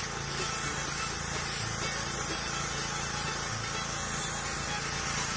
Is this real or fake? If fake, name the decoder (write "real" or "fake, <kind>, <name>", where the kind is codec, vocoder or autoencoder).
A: real